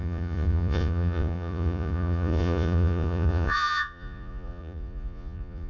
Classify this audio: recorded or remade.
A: remade